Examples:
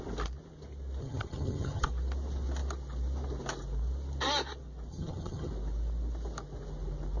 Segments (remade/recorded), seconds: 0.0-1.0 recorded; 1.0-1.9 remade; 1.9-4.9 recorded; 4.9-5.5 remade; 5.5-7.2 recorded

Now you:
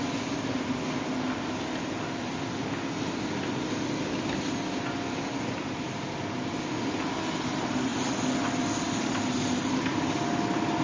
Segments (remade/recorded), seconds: 0.0-10.8 recorded

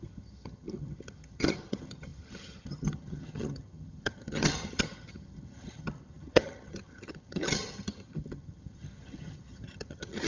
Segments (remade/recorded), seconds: 0.0-10.3 remade

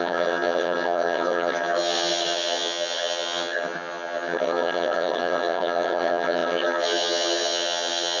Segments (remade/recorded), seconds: 0.0-8.2 remade

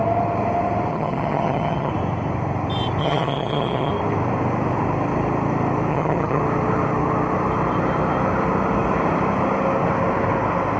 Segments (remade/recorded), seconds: 0.0-0.9 recorded; 0.9-1.9 remade; 1.9-3.0 recorded; 3.0-3.9 remade; 3.9-5.9 recorded; 5.9-6.4 remade; 6.4-10.8 recorded